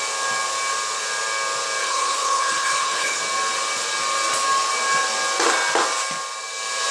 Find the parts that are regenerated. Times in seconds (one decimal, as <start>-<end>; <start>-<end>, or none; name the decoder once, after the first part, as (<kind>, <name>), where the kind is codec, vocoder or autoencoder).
1.8-3.2 (codec, HILCodec)